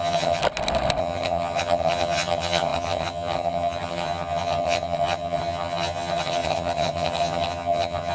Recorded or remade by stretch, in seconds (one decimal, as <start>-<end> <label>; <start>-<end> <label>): 0.0-0.4 remade; 0.4-1.0 recorded; 1.0-8.1 remade